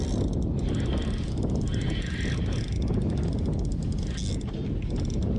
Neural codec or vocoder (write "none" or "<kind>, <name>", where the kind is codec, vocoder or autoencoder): none